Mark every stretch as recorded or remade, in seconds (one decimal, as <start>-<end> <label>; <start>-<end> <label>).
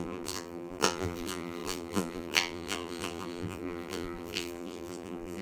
0.0-5.4 remade